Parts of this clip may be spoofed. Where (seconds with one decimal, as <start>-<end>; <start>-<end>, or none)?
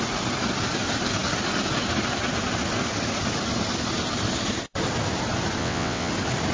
5.6-6.1